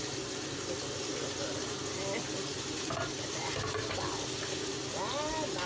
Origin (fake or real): real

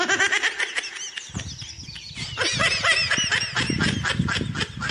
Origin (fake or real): real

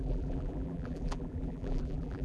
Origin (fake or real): fake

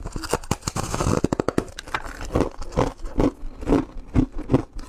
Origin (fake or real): real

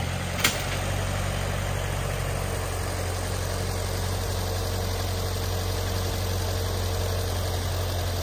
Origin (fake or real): fake